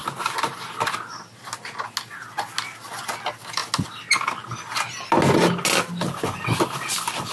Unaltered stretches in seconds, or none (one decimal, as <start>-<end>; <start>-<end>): 0.9-7.3